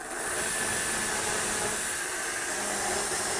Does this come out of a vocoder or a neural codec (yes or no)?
no